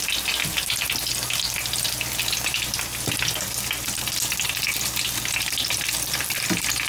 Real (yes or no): yes